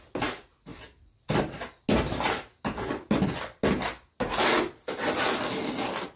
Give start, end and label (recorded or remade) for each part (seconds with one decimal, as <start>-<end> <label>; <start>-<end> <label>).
0.0-6.2 recorded